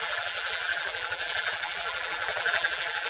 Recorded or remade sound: remade